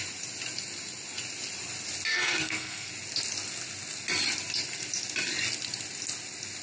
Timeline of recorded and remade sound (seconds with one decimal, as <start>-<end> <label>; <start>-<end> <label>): 0.0-2.1 recorded; 2.1-2.9 remade; 2.9-6.6 recorded